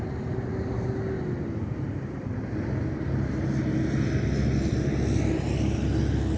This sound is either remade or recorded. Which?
recorded